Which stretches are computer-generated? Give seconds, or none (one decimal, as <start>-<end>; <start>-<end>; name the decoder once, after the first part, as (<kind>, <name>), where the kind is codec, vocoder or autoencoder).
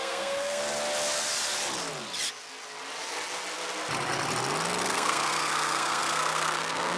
0.0-0.6 (codec, SNAC); 4.8-7.0